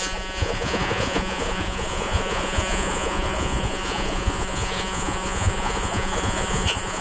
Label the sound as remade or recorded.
remade